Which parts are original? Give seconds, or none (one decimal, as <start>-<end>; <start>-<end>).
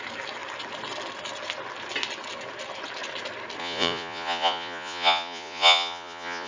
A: 0.0-3.6